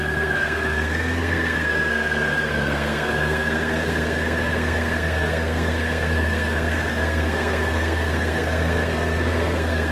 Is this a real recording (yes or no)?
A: no